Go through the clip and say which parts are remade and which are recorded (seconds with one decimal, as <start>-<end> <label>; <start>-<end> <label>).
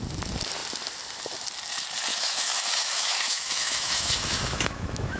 0.0-2.1 recorded; 2.1-5.2 remade